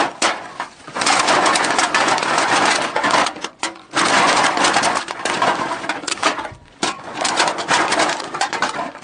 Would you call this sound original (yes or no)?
no